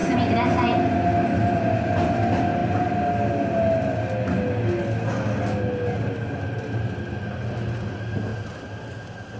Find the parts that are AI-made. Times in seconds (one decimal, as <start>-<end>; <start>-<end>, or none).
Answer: none